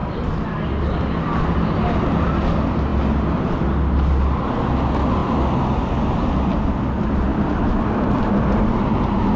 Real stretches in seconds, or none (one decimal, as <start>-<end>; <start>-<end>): 0.0-9.4

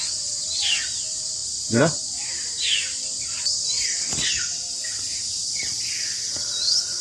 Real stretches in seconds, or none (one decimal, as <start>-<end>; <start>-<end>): 0.0-7.0

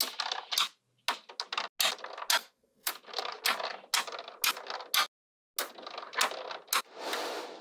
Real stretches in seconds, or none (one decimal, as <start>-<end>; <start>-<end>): 0.0-2.4; 2.9-7.6

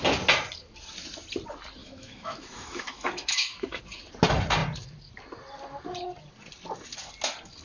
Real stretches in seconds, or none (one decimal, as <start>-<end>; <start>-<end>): 0.0-1.8; 3.8-7.6

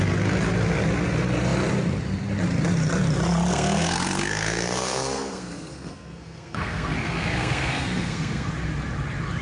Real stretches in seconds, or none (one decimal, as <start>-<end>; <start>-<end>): 0.0-3.5; 8.5-9.4

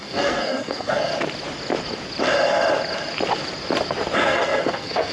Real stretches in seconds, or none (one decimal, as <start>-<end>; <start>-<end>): 1.1-4.2

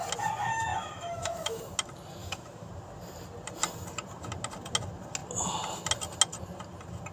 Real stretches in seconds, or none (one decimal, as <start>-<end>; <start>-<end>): 0.0-0.7; 1.6-2.2; 2.7-7.1

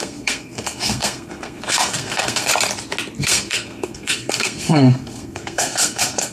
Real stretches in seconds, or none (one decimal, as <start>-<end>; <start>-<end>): 2.5-3.2